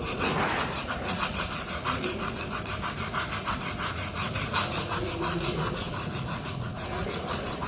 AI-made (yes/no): yes